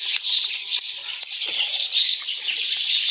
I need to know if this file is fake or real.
fake